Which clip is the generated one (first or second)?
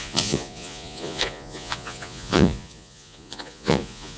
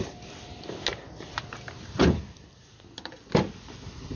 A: first